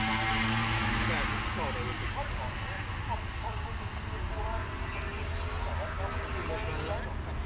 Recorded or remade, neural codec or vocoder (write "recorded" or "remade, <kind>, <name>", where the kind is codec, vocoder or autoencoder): recorded